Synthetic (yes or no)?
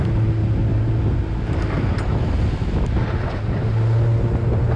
no